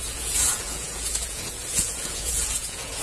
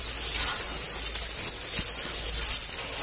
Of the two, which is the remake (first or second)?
first